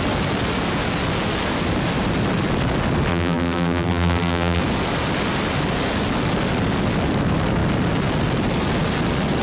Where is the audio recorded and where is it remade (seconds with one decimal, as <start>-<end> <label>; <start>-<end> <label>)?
0.0-3.1 recorded; 3.1-4.6 remade; 4.6-9.4 recorded